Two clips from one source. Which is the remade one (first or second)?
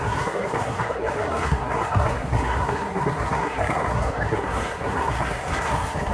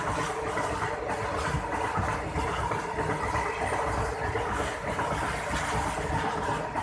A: first